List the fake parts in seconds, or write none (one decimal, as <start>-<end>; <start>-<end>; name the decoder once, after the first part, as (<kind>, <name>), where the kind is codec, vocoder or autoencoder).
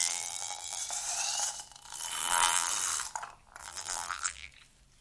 0.0-0.8 (vocoder, BigVGAN v2); 2.2-2.7; 3.6-4.5